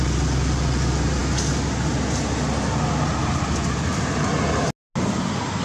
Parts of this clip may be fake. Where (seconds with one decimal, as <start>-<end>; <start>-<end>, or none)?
none